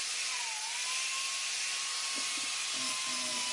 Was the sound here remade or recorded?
recorded